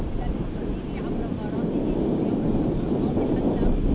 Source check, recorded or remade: recorded